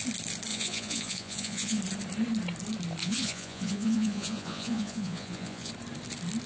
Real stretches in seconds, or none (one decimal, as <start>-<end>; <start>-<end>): 0.0-0.5; 1.8-3.0; 5.7-6.5

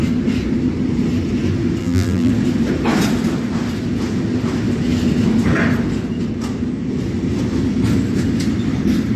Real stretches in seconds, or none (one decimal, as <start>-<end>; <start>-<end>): 0.0-1.8; 2.3-9.2

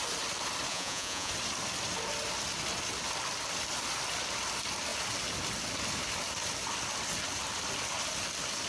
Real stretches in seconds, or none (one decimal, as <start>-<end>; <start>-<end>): 0.0-0.7; 1.3-8.7

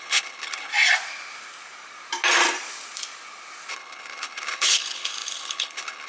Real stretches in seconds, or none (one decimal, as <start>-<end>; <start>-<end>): 0.7-3.7